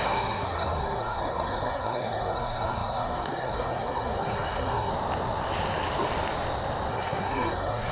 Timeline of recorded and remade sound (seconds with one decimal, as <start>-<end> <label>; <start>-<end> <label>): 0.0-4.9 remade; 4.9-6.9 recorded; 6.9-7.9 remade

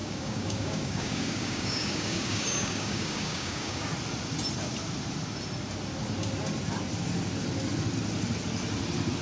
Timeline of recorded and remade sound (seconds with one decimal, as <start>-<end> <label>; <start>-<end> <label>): 0.0-3.9 remade; 3.9-9.2 recorded

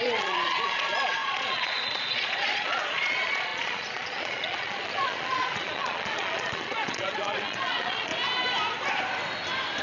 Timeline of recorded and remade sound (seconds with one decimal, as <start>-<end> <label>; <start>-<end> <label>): 0.0-8.1 remade; 8.1-9.8 recorded

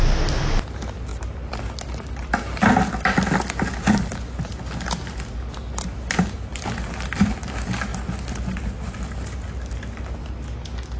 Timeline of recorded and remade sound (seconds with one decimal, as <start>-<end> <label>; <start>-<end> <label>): 0.0-11.0 recorded

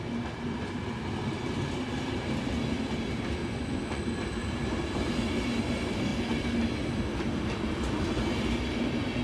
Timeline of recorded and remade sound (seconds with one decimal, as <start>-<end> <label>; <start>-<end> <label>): 0.0-3.4 recorded; 3.4-4.0 remade; 4.0-9.2 recorded

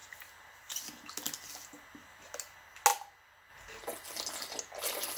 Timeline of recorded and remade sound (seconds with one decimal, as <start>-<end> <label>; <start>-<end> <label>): 0.0-5.2 recorded